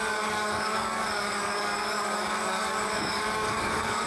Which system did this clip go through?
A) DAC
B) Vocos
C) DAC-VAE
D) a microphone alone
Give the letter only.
A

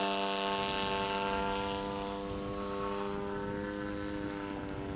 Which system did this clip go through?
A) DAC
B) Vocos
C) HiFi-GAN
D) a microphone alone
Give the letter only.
D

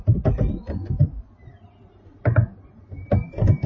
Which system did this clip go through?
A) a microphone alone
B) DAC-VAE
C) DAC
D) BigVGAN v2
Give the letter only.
A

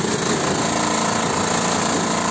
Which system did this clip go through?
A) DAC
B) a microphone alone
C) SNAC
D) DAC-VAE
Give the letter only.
B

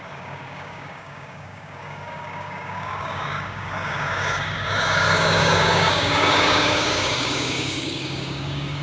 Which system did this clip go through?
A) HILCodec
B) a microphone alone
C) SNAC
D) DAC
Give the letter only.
D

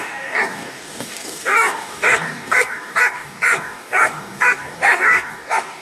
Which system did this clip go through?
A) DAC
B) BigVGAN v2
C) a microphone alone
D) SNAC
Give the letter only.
A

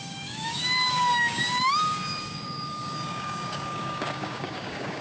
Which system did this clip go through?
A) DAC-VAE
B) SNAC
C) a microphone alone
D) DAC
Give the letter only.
D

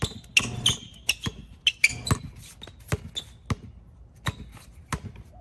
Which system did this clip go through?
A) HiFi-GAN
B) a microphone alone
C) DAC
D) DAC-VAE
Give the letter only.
B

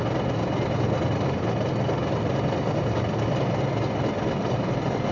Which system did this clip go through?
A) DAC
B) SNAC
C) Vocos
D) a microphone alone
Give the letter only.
D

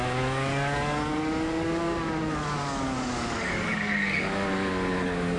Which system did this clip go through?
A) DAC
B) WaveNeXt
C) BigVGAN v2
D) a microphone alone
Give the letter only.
A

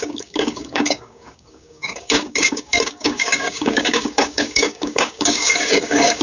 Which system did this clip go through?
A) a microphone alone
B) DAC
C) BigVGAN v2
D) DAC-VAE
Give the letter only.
B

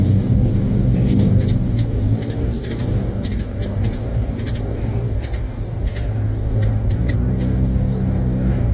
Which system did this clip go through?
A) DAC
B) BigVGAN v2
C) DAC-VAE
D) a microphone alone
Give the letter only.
A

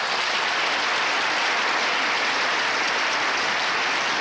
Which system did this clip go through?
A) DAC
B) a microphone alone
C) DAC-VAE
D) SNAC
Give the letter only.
B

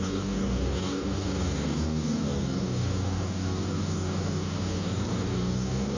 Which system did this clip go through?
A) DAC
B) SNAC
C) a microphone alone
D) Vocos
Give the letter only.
A